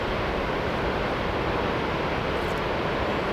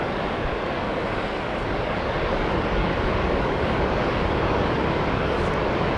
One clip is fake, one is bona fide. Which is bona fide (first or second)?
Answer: first